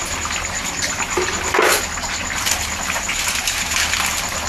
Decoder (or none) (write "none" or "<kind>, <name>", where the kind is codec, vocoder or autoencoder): none